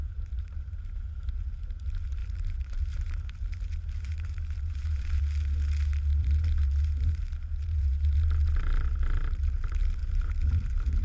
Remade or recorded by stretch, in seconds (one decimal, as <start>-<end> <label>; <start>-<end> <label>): 0.0-0.8 remade; 0.8-2.2 recorded; 2.2-5.2 remade; 5.2-6.2 recorded; 6.2-8.5 remade; 8.5-10.0 recorded; 10.0-10.5 remade; 10.5-11.0 recorded